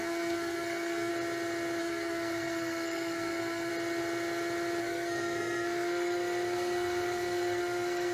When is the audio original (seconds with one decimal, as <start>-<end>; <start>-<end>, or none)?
1.1-1.8; 3.7-4.8